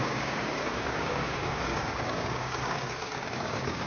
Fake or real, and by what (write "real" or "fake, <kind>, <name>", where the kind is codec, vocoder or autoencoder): fake, codec, DAC